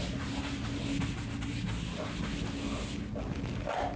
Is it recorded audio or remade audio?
recorded